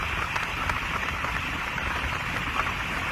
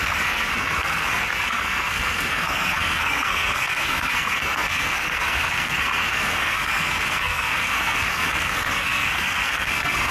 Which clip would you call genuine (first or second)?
first